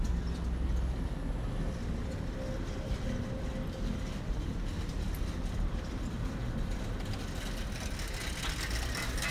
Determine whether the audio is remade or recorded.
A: recorded